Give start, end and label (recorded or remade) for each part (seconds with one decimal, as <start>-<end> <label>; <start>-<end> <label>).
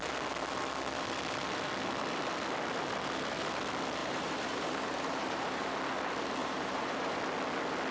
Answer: 0.0-4.0 recorded; 4.0-5.7 remade; 5.7-6.4 recorded; 6.4-7.2 remade; 7.2-7.9 recorded